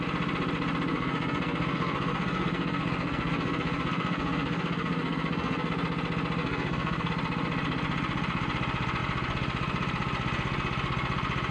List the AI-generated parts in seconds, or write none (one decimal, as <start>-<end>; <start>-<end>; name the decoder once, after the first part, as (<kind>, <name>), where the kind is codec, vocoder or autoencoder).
0.9-5.7 (codec, SNAC); 6.4-7.1